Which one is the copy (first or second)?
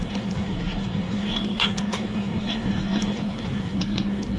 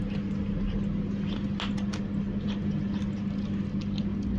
first